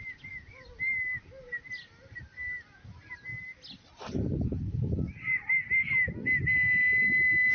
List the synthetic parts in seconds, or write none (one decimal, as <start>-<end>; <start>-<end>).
none